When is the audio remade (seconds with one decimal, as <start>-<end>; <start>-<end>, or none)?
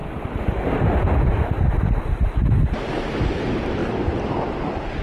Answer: none